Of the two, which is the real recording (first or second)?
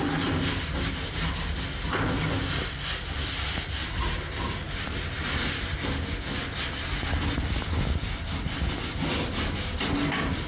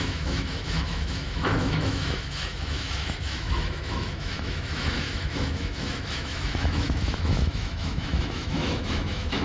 first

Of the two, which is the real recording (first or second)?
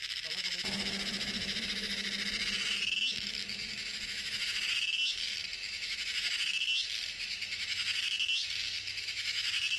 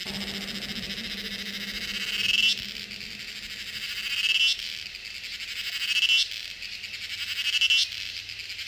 second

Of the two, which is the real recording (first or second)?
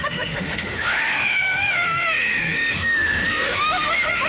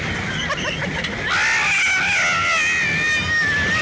second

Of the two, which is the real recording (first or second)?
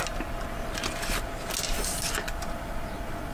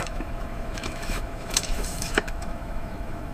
first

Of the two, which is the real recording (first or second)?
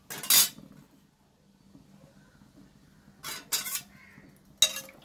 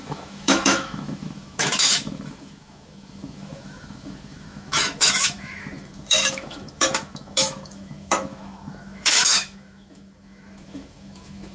first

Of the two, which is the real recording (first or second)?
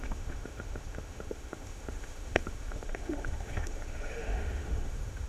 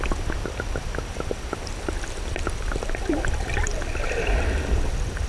second